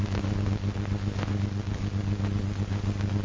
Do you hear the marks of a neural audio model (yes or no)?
no